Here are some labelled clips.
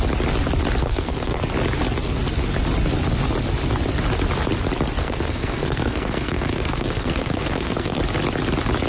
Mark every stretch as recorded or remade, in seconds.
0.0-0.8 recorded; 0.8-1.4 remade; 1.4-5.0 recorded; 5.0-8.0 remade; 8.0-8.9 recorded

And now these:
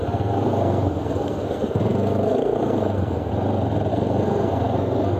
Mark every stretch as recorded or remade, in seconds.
0.0-3.3 remade; 3.3-3.9 recorded; 3.9-5.2 remade

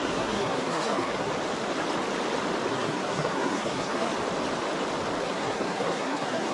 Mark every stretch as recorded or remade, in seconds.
0.0-1.3 remade; 1.3-2.7 recorded; 2.7-4.1 remade; 4.1-5.2 recorded; 5.2-6.5 remade